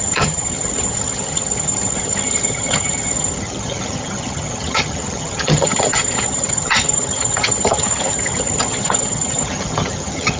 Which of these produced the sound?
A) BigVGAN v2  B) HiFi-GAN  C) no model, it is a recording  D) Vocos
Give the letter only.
B